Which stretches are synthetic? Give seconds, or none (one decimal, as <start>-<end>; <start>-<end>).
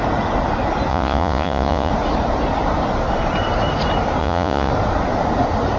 0.9-1.9; 4.2-4.7